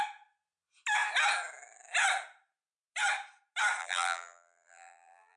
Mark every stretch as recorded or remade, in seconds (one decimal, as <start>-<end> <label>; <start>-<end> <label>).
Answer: 0.0-3.8 recorded; 3.8-5.4 remade